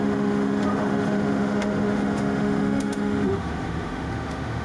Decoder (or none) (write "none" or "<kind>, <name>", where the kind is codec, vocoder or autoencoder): autoencoder, DAC-VAE